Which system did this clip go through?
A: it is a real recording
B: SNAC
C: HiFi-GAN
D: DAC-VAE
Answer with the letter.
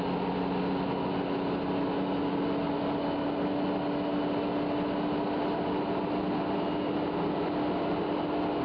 A